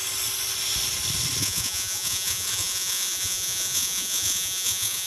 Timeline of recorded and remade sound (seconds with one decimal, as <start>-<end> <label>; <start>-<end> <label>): 0.0-1.4 recorded; 1.4-5.1 remade